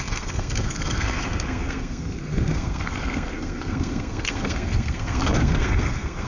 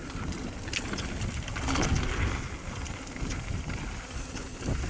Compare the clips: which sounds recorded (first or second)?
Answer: second